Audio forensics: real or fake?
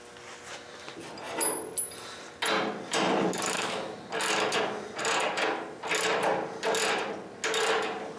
real